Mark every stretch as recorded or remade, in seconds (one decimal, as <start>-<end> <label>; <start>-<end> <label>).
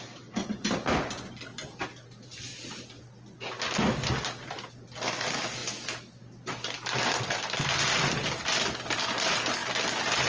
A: 0.0-0.4 recorded; 0.4-1.3 remade; 1.3-2.5 recorded; 2.5-3.0 remade; 3.0-10.3 recorded